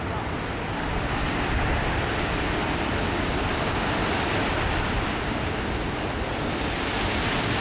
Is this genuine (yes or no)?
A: yes